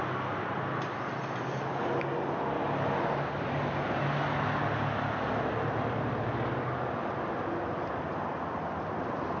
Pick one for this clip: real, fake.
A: real